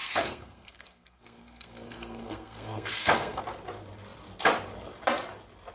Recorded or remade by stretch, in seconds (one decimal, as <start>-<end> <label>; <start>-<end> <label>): 0.0-3.4 remade; 3.4-5.7 recorded